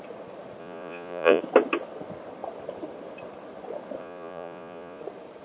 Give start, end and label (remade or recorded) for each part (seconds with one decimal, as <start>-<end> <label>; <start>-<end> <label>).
0.0-0.6 recorded; 0.6-1.4 remade; 1.4-4.0 recorded; 4.0-5.0 remade; 5.0-5.4 recorded